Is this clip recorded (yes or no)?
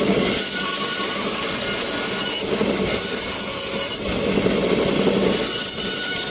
yes